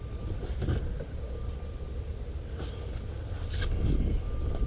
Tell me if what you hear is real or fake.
real